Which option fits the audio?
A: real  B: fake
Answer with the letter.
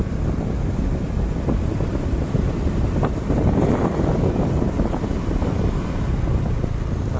A